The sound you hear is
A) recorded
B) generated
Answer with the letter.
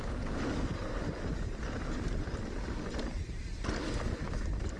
A